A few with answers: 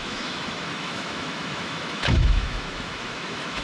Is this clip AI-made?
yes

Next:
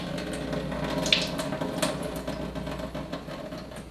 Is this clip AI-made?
no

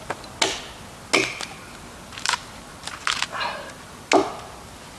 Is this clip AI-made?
no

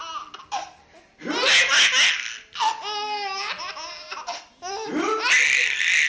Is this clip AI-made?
no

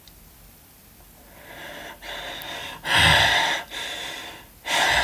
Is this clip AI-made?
no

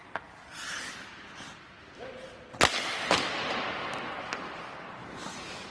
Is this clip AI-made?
no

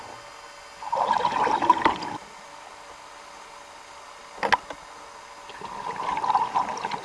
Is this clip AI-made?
no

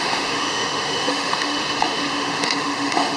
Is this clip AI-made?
yes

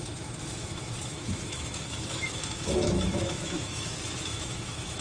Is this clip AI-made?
yes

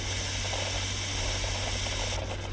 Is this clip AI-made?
no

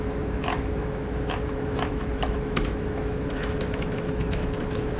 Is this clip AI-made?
yes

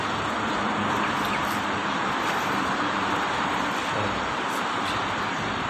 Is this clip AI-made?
no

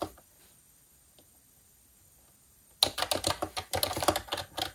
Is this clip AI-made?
no